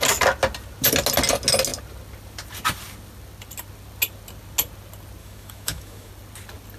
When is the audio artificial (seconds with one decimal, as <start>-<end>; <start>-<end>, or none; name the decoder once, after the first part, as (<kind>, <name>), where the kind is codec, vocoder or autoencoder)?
5.2-6.1 (autoencoder, DAC-VAE)